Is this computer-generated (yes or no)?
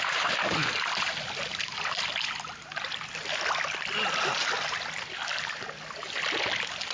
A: no